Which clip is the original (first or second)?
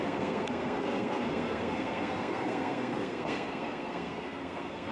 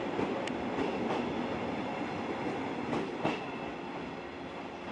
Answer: second